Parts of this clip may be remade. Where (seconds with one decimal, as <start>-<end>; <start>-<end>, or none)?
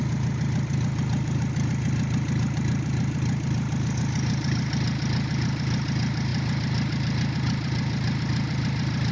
none